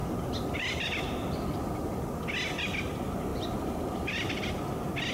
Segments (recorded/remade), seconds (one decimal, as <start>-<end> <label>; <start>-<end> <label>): 0.0-0.9 remade; 0.9-3.3 recorded; 3.3-4.4 remade; 4.4-5.1 recorded